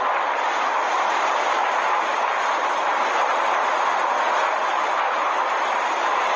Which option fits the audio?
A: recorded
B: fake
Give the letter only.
A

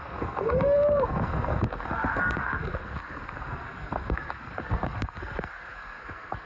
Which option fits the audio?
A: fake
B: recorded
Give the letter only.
A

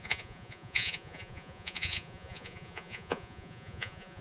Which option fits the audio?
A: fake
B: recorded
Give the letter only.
A